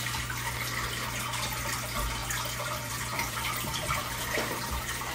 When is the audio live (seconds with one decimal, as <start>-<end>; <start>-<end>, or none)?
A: 0.0-2.2